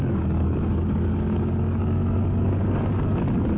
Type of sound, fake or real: fake